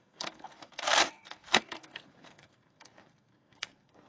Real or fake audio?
fake